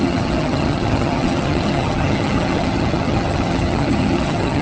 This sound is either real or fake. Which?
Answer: fake